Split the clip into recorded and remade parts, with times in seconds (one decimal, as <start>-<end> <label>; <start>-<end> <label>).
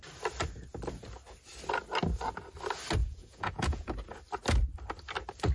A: 0.0-3.0 recorded; 3.0-3.9 remade; 3.9-5.5 recorded